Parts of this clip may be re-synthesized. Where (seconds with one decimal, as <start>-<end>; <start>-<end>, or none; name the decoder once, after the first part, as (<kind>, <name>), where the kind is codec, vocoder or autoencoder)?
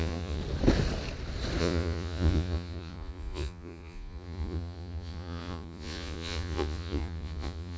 0.0-0.4 (vocoder, Vocos); 1.6-7.8